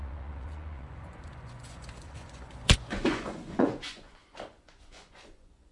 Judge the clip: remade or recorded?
remade